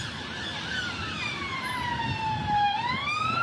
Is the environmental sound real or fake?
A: real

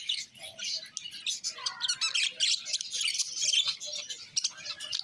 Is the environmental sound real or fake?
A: real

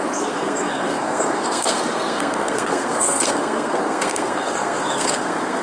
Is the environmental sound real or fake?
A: fake